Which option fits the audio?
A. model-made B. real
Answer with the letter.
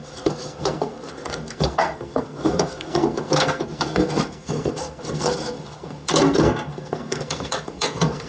A